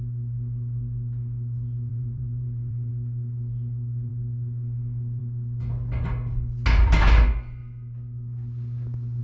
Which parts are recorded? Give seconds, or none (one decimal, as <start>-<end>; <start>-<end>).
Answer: 0.0-1.9; 2.9-9.2